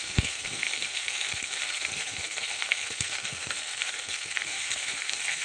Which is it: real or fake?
fake